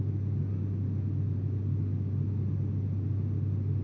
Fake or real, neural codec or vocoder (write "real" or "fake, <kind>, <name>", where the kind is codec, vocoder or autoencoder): real